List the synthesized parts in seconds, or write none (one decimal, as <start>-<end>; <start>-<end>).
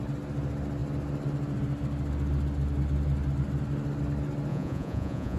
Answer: 4.5-5.4